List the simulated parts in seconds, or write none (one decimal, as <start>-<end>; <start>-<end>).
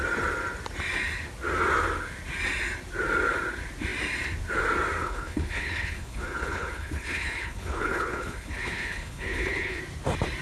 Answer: 5.0-9.8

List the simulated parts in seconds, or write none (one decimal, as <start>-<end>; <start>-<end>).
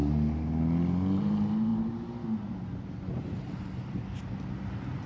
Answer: none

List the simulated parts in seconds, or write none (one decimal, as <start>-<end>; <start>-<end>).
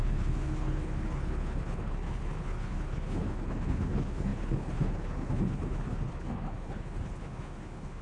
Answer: 0.0-8.0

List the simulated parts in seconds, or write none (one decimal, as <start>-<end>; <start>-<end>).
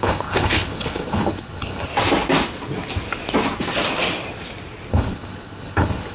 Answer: 0.0-1.9; 4.9-6.1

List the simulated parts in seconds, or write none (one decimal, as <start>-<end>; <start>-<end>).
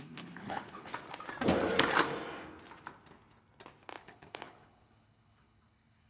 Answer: 0.0-0.9; 4.0-6.1